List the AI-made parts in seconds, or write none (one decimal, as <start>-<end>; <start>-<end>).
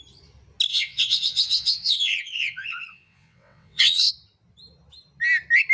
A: 0.7-4.1